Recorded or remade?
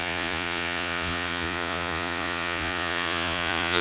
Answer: remade